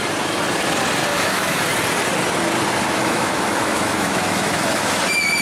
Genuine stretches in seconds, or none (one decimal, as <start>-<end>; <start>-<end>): 0.0-1.1; 1.6-3.0; 5.0-5.4